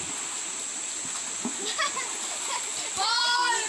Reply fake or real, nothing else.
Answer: real